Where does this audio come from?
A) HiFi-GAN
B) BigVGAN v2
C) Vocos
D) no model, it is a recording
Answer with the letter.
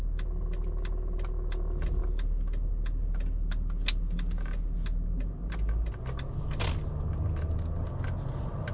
D